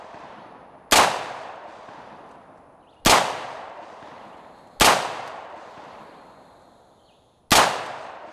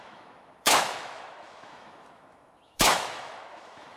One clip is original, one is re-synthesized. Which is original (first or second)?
first